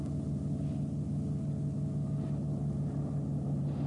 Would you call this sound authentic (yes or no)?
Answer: yes